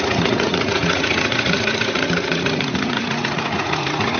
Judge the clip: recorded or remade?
remade